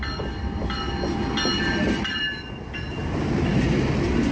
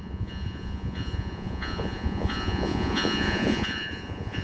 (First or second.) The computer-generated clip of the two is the second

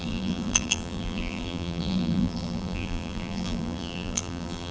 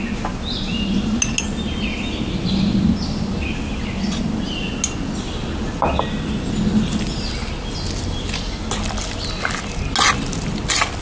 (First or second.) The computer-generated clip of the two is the first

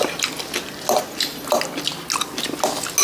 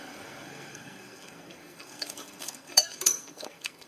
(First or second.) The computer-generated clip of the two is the second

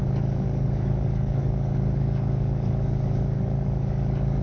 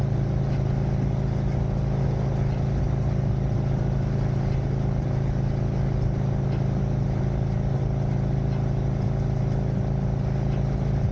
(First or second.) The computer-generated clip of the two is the first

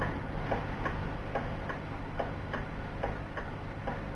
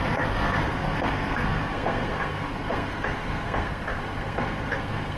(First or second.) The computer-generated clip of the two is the second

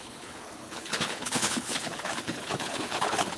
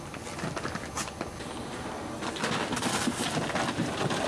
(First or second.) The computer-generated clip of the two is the first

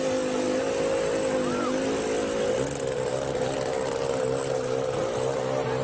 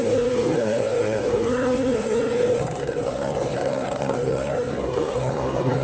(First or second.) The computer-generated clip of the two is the second